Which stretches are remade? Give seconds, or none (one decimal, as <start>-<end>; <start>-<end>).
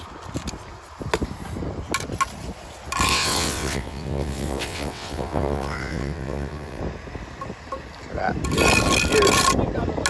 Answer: 3.1-6.8